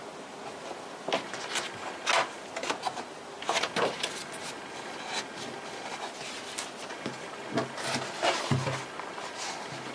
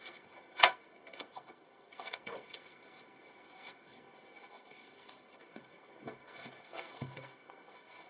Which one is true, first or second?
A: first